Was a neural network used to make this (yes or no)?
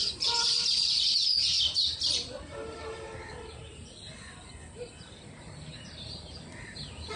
yes